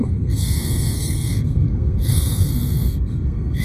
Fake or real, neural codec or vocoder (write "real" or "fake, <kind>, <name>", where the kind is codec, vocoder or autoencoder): fake, codec, SNAC